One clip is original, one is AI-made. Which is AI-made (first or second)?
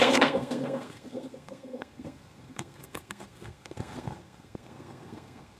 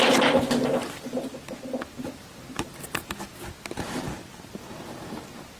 first